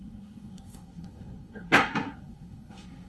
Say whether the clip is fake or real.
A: fake